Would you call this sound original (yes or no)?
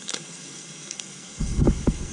no